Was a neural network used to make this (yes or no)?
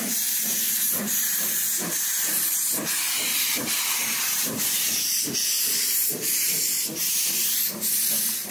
yes